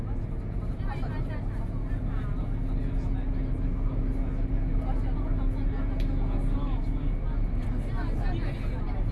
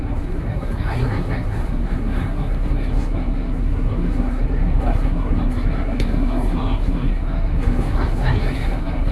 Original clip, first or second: first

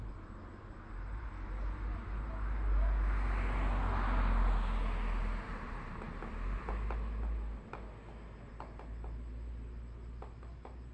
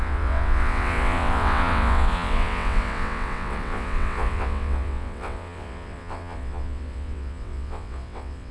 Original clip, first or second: first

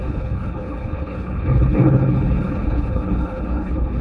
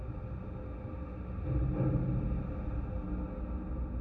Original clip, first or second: second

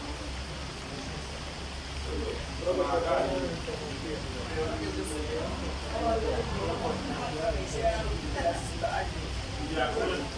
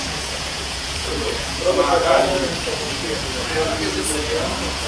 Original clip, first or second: first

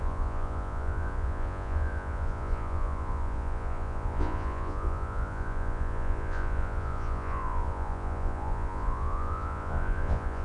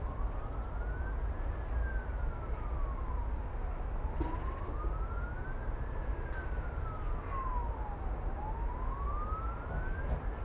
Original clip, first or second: second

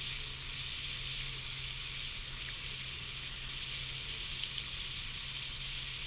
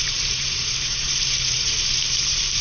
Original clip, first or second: first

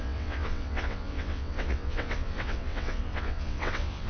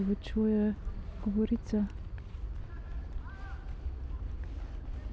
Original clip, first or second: second